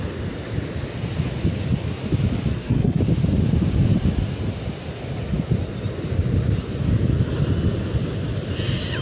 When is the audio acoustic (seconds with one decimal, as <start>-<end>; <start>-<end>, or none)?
0.0-2.5; 3.0-9.0